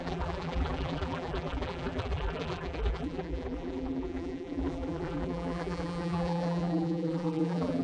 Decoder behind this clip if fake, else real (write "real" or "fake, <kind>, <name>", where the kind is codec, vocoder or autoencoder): fake, vocoder, BigVGAN v2